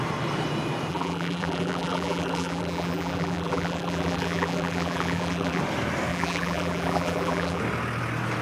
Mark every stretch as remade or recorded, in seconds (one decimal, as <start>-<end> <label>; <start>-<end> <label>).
0.0-0.9 recorded; 0.9-5.6 remade; 5.6-6.1 recorded; 6.1-7.6 remade; 7.6-8.4 recorded